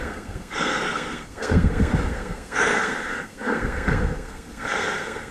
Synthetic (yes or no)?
yes